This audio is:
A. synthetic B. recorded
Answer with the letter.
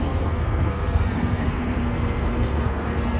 A